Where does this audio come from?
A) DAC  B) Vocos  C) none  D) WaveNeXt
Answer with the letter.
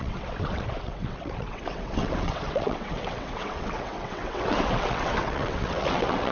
D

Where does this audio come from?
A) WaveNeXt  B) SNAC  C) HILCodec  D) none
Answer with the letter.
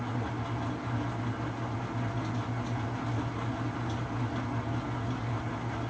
D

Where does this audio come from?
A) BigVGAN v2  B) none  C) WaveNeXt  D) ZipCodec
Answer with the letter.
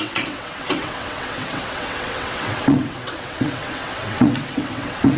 C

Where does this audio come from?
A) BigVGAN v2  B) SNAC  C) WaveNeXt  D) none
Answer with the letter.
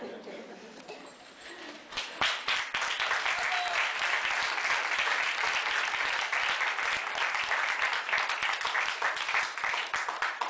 D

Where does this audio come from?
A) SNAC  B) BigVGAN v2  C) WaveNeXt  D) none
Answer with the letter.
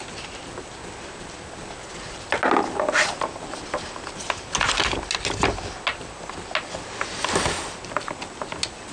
D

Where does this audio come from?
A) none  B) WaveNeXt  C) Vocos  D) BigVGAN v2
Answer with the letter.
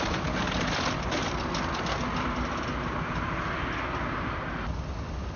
A